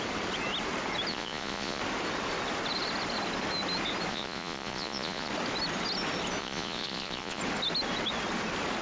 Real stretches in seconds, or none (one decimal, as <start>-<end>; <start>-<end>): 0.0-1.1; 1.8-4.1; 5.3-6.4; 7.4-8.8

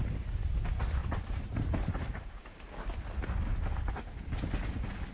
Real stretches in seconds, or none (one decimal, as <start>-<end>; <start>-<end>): 0.0-1.0; 2.4-5.1

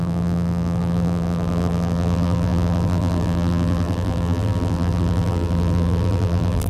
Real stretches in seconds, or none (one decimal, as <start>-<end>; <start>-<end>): none

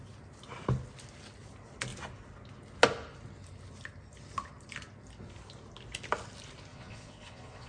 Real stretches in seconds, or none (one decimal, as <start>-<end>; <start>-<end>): 0.0-6.7

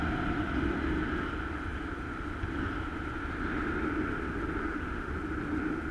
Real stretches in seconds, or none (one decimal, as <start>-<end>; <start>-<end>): 0.0-4.6; 5.1-5.9

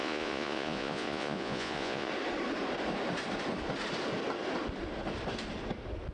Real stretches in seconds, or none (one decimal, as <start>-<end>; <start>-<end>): 2.1-6.1